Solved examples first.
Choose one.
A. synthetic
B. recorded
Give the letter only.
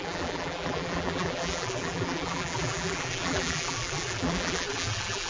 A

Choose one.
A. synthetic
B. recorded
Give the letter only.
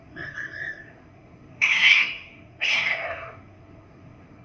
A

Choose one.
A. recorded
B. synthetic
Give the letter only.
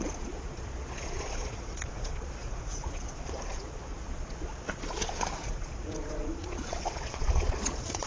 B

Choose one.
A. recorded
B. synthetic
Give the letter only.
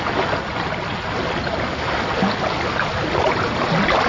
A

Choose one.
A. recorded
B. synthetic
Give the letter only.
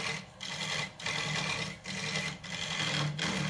A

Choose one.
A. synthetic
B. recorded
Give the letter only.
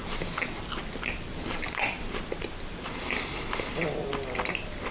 B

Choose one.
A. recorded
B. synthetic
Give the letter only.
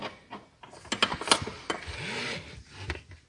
A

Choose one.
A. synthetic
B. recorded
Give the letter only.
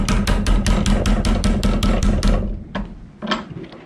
B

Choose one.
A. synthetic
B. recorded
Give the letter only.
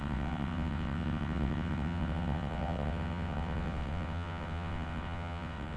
A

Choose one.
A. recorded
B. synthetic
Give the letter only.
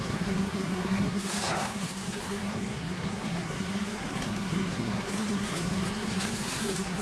B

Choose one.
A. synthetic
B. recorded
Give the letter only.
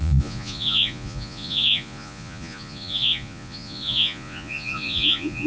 A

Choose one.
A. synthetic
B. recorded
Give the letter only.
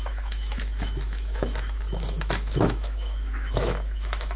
A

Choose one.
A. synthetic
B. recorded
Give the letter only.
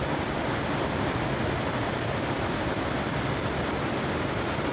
B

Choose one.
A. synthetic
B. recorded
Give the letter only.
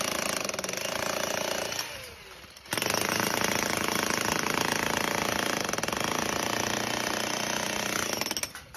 B